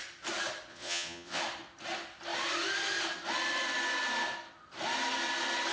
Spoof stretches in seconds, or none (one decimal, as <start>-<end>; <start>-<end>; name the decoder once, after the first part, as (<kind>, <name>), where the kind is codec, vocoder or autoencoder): 0.7-1.4 (vocoder, Vocos)

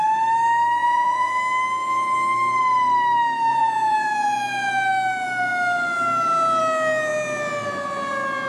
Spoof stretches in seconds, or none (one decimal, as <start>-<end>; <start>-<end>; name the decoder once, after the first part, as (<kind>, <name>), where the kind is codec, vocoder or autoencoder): 0.8-1.4 (vocoder, Vocos); 3.5-4.7

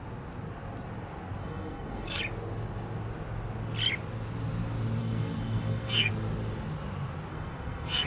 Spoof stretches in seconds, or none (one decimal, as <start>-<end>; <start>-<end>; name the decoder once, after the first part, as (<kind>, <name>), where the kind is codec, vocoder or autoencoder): 1.4-2.2 (codec, SNAC); 5.0-6.1; 7.3-8.1